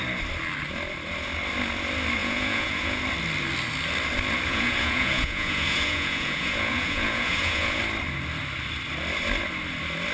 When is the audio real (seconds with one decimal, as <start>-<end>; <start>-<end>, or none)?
0.0-2.2; 3.0-4.5; 7.8-10.1